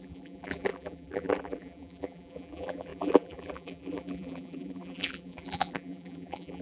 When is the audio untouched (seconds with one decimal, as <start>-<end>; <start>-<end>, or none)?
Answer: none